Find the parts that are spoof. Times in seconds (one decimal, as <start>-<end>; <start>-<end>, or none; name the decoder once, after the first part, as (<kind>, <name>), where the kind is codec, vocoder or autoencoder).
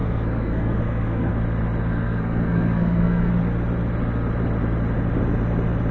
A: 0.0-1.3 (codec, SNAC); 1.9-3.3